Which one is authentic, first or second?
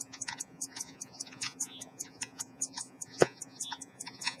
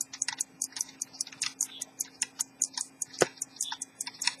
second